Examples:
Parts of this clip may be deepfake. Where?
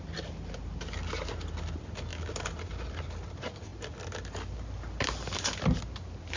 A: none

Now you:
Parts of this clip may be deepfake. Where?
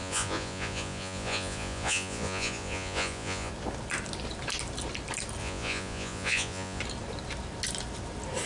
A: 0.0-3.5 (vocoder, Vocos); 5.4-6.8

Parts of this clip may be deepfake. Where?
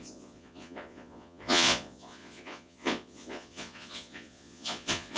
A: 0.0-5.2 (vocoder, Vocos)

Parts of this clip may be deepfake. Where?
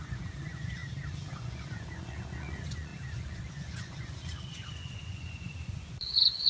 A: 0.0-0.8 (vocoder, Vocos); 1.3-6.5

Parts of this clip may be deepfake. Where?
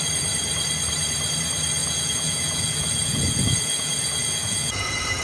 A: 1.8-5.2 (vocoder, Vocos)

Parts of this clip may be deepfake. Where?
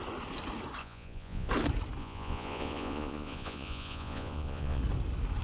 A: 0.8-1.5 (vocoder, Vocos); 2.0-4.8